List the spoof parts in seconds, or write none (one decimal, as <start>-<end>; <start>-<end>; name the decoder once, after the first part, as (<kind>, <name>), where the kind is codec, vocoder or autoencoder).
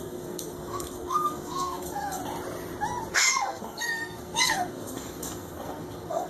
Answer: 0.0-2.2 (codec, SNAC); 3.1-6.3